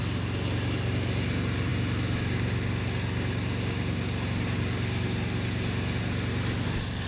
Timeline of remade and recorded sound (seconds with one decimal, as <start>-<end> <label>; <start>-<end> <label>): 0.0-7.1 recorded